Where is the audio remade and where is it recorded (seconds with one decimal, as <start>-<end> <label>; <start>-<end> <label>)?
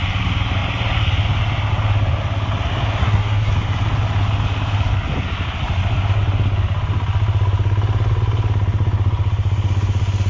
0.0-3.0 recorded; 3.0-3.5 remade; 3.5-10.3 recorded